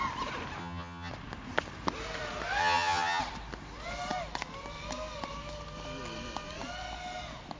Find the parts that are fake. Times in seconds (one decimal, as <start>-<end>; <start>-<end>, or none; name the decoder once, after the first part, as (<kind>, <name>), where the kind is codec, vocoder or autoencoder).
0.6-1.1 (vocoder, HiFi-GAN); 2.6-3.2